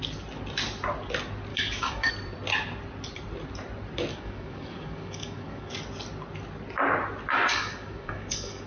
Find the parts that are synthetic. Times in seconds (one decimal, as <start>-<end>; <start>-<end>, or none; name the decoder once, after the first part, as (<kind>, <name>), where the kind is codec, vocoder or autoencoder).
1.5-2.1 (codec, DAC); 4.1-5.7; 7.5-8.7